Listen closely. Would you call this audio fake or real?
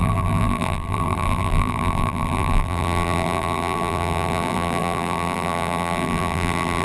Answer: fake